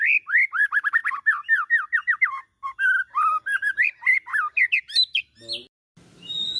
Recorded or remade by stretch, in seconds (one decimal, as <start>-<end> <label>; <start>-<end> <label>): 0.0-6.6 recorded